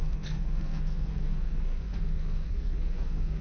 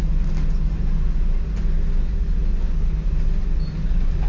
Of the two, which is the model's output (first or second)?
first